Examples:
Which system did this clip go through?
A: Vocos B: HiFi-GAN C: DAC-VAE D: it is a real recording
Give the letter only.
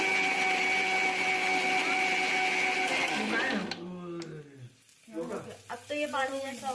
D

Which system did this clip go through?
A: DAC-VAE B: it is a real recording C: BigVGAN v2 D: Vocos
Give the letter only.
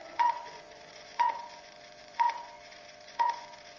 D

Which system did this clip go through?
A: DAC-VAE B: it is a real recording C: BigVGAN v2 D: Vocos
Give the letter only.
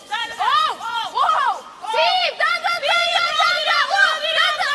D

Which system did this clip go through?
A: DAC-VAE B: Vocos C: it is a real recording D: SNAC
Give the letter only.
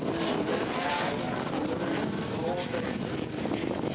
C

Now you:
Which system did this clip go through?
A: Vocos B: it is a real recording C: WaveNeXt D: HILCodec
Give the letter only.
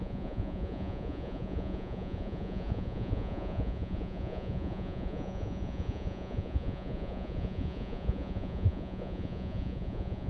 A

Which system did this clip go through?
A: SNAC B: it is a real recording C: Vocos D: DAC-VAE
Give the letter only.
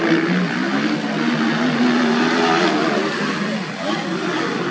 B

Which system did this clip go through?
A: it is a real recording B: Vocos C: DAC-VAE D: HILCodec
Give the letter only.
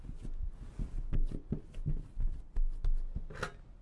A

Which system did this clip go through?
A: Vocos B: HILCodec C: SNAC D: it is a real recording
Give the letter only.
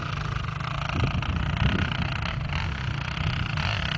D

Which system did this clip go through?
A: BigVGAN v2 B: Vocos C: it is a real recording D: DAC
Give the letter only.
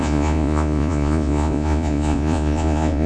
B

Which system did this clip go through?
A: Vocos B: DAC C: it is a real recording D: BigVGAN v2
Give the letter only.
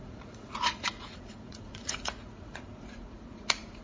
A